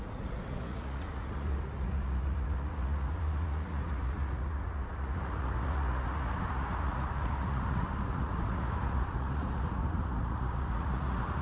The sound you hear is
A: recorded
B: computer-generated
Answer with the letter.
B